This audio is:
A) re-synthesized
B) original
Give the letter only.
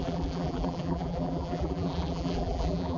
A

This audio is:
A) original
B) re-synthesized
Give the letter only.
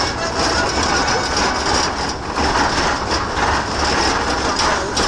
A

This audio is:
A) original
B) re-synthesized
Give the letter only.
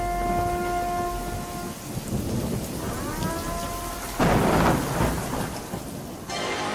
A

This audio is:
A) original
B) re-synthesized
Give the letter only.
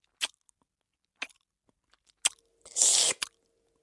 A